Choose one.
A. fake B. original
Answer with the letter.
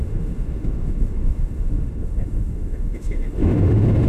A